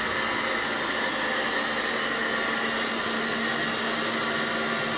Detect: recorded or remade recorded